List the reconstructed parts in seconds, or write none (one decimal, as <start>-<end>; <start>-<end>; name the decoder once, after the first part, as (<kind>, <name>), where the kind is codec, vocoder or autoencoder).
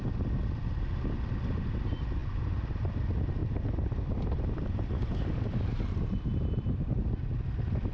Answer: none